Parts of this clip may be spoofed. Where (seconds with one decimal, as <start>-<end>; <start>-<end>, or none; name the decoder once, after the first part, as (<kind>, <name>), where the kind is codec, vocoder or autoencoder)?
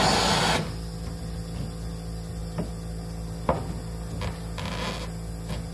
none